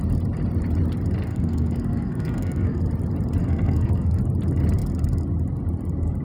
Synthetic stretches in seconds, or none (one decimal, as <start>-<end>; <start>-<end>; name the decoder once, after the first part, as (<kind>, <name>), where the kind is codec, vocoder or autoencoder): 1.3-2.8 (codec, SNAC); 3.4-4.2